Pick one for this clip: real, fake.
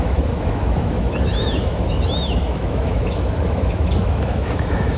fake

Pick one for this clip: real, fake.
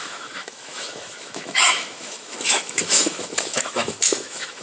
fake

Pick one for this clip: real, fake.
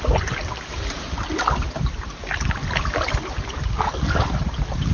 real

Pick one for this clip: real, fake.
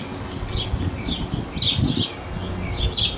real